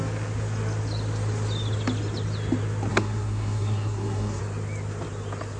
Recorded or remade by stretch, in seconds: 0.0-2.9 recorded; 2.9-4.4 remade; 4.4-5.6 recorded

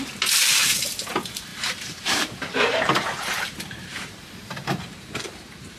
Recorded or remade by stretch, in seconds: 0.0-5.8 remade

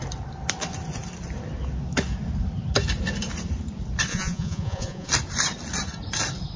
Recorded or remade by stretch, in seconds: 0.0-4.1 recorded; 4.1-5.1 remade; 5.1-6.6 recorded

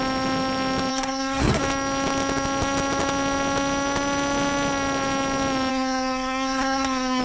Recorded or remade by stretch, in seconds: 0.0-0.9 recorded; 0.9-1.6 remade; 1.6-5.7 recorded; 5.7-7.2 remade